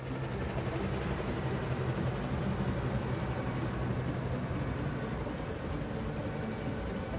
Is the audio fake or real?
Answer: real